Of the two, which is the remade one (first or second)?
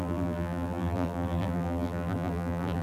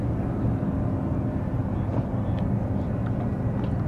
first